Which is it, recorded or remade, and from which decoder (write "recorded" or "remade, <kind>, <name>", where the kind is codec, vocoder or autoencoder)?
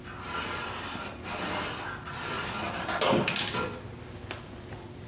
recorded